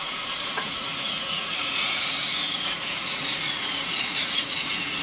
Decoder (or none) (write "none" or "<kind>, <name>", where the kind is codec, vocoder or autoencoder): vocoder, Vocos